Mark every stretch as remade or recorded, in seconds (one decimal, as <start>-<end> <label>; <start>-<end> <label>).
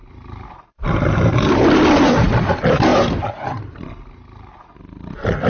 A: 0.0-1.6 remade; 1.6-5.5 recorded